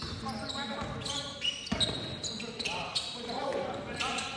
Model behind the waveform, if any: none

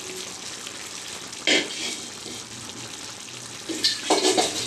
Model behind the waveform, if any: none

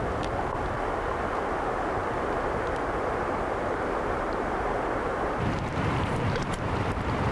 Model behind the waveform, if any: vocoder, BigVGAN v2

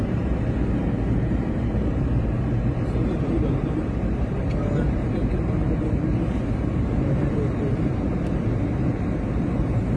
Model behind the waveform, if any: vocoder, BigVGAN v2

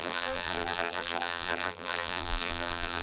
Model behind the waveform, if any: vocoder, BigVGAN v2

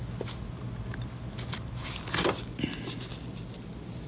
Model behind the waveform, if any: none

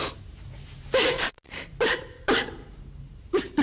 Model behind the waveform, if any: vocoder, BigVGAN v2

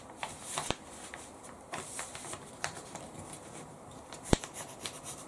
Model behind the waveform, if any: vocoder, BigVGAN v2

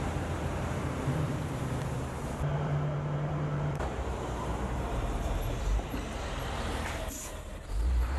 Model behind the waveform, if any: vocoder, BigVGAN v2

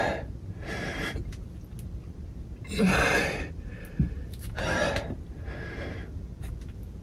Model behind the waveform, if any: none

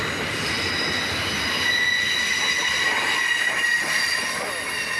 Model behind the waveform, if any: none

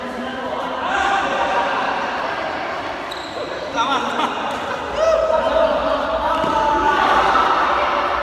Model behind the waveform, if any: vocoder, BigVGAN v2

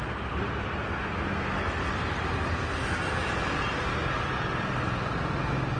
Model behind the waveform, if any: none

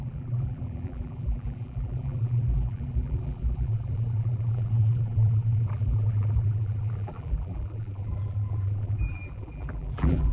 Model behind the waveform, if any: vocoder, BigVGAN v2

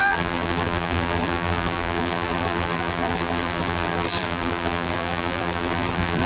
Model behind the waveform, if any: vocoder, BigVGAN v2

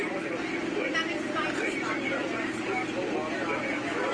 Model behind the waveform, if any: none